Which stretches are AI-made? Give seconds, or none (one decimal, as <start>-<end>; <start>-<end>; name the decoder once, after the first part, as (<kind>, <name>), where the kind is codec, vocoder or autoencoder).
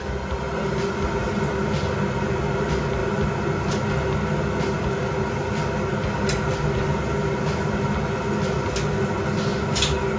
none